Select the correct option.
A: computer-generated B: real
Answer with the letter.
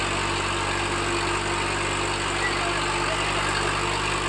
B